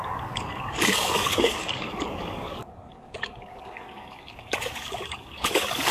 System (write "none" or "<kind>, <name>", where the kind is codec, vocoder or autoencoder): codec, DAC